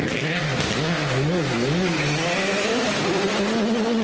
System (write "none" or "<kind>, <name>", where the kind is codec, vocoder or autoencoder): none